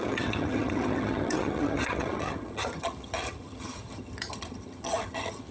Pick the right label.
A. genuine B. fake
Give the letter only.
B